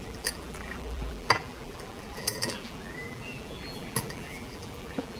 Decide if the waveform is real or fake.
fake